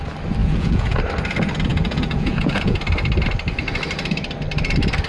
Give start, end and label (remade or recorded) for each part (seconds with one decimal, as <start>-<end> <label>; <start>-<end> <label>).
0.0-0.4 recorded; 0.4-1.0 remade; 1.0-1.7 recorded; 1.7-2.8 remade; 2.8-5.1 recorded

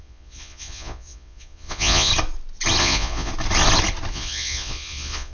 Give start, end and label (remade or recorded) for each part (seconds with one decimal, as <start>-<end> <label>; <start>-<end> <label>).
0.0-2.1 remade; 2.1-2.8 recorded; 2.8-3.3 remade; 3.3-4.1 recorded; 4.1-5.3 remade

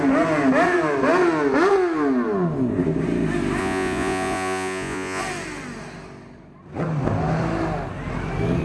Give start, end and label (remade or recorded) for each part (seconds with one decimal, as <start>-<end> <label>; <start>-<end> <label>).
0.0-3.6 recorded; 3.6-5.2 remade; 5.2-8.6 recorded

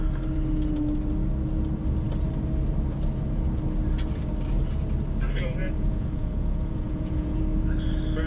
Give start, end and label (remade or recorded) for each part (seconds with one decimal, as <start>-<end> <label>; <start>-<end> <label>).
0.0-5.6 recorded; 5.6-7.4 remade; 7.4-8.3 recorded

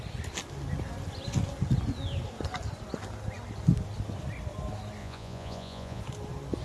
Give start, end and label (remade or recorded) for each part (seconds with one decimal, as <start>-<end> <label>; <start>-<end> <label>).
0.0-5.0 recorded; 5.0-6.0 remade; 6.0-6.6 recorded

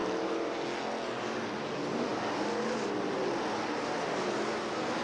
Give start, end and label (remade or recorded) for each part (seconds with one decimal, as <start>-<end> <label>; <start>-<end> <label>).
0.0-5.0 recorded